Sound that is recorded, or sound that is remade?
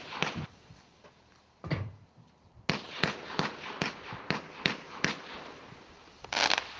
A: recorded